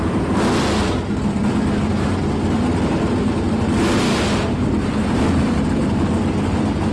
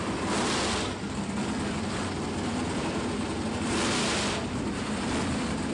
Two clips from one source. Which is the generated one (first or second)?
second